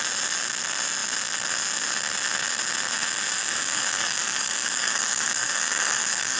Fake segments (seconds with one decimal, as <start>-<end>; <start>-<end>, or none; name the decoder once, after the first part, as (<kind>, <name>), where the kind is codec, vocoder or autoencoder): 3.4-6.4 (codec, DAC)